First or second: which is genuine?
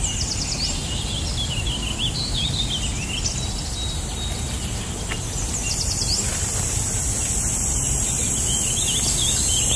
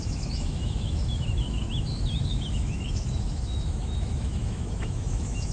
first